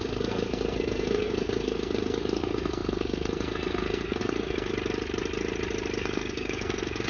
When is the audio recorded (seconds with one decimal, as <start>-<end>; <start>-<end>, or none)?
4.7-6.0